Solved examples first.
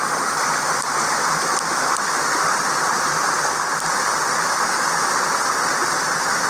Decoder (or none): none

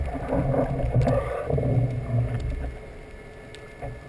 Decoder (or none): none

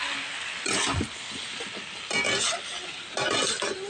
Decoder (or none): none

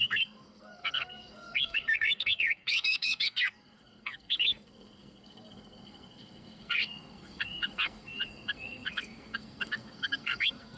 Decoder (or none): codec, SNAC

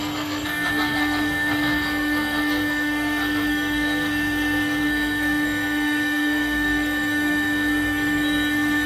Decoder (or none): codec, SNAC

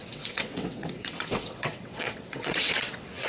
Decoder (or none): vocoder, WaveNeXt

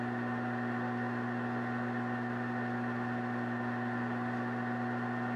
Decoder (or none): none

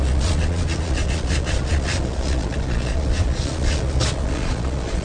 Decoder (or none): vocoder, Vocos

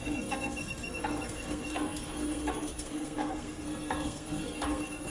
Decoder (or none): codec, SNAC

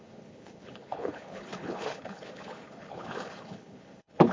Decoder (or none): codec, HILCodec